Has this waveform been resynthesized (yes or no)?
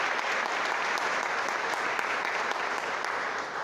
no